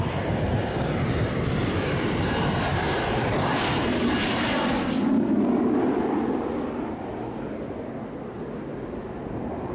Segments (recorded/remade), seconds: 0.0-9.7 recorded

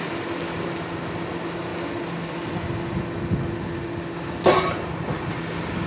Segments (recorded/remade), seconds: 0.0-5.9 recorded

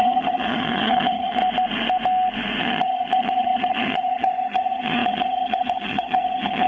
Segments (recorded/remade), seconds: 0.0-1.4 remade; 1.4-2.6 recorded; 2.6-6.7 remade